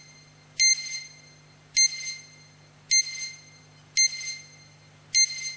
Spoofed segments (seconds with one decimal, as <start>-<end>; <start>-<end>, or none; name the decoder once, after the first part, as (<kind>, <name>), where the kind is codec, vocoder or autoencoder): none